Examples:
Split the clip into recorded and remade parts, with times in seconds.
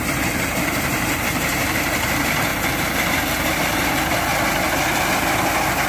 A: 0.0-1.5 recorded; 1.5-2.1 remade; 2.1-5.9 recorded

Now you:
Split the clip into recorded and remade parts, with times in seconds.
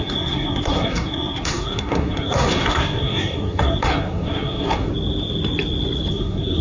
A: 0.0-4.9 remade; 4.9-6.1 recorded; 6.1-6.6 remade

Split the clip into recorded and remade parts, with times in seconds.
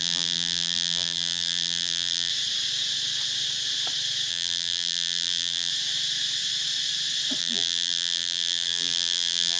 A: 0.0-2.3 remade; 2.3-4.3 recorded; 4.3-5.7 remade; 5.7-7.4 recorded; 7.4-9.6 remade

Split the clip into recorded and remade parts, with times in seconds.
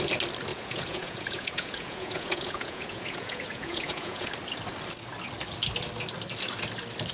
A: 0.0-0.5 recorded; 0.5-4.3 remade; 4.3-7.1 recorded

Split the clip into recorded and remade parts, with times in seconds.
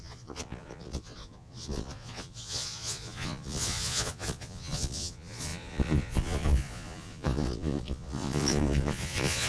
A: 0.0-9.5 remade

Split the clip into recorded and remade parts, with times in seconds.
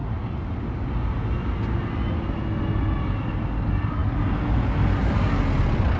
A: 0.0-6.0 recorded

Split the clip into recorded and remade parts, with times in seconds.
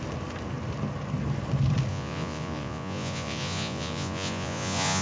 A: 0.0-1.9 recorded; 1.9-5.0 remade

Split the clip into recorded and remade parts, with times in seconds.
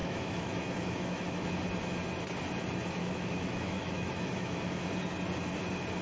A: 0.0-1.5 remade; 1.5-3.0 recorded; 3.0-4.9 remade; 4.9-6.0 recorded